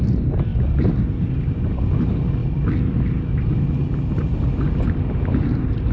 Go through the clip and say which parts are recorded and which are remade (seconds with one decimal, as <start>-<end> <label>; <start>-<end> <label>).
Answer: 0.0-5.9 recorded